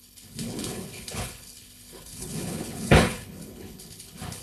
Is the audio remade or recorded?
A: remade